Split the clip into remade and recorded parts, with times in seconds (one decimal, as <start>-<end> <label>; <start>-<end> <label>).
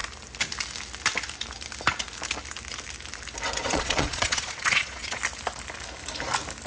0.0-3.6 recorded; 3.6-5.2 remade; 5.2-6.7 recorded